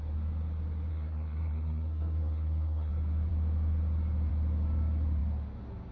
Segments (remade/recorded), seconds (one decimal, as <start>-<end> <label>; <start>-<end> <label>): 0.0-0.9 recorded; 0.9-2.9 remade; 2.9-5.9 recorded